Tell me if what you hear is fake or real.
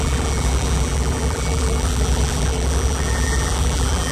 fake